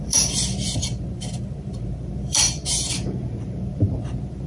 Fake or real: fake